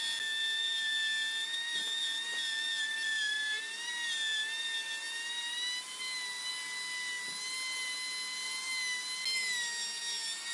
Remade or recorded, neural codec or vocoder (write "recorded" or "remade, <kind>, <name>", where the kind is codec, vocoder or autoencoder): recorded